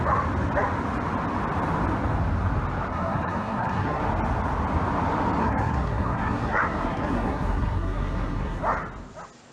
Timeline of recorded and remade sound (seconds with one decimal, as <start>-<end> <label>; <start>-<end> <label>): 0.0-2.9 recorded; 2.9-4.0 remade; 4.0-5.4 recorded; 5.4-8.6 remade; 8.6-9.5 recorded